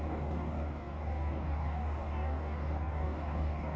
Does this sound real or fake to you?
fake